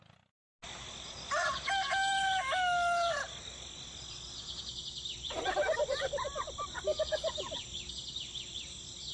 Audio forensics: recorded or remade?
recorded